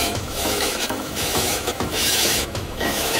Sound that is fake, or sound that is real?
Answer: fake